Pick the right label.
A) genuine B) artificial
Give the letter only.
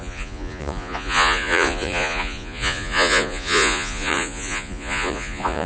B